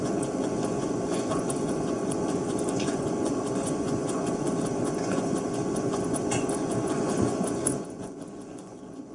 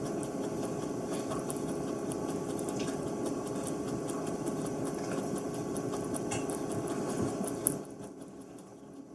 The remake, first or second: first